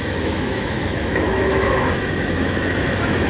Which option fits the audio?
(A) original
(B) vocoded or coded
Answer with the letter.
B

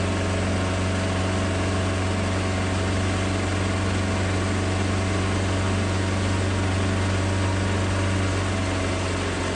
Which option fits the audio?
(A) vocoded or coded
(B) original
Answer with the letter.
B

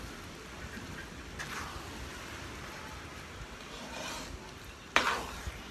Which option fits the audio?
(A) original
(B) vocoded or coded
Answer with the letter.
A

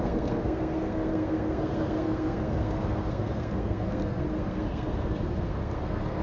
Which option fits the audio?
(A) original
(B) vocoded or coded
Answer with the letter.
B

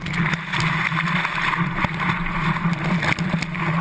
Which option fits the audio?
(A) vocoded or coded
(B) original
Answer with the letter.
B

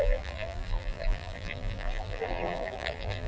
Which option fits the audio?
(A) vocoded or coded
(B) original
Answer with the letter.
A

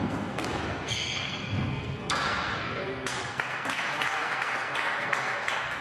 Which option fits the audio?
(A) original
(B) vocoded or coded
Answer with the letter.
B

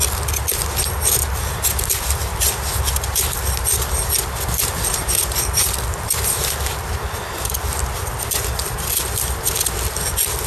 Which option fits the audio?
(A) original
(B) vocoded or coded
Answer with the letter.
A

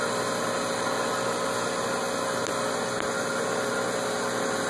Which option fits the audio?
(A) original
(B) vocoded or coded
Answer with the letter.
A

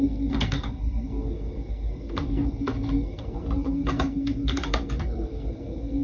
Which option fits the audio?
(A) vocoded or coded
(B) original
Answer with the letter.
A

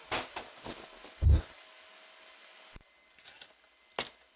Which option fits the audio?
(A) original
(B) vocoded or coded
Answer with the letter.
A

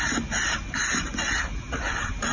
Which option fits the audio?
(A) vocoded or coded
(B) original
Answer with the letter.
B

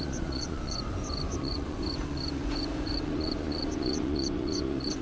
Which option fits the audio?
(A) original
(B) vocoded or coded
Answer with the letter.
B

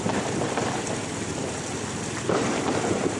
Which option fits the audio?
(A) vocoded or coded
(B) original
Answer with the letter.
B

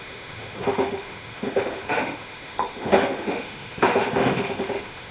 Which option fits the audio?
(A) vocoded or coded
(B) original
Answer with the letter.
A